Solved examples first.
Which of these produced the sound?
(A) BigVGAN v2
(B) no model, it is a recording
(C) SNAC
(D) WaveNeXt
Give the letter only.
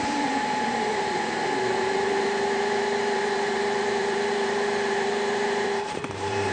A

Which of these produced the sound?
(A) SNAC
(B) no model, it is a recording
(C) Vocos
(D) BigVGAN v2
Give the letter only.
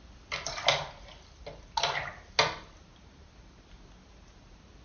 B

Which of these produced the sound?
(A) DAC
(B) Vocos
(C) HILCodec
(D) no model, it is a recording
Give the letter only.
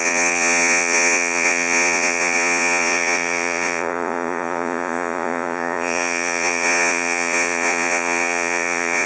B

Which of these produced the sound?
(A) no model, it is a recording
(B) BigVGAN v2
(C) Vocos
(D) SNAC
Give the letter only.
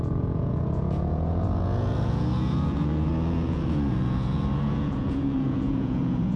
C